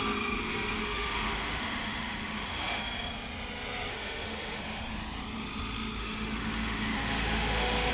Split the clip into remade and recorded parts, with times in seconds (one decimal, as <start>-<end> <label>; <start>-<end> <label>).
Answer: 0.0-0.8 recorded; 0.8-2.8 remade; 2.8-3.9 recorded; 3.9-4.8 remade; 4.8-6.0 recorded; 6.0-7.9 remade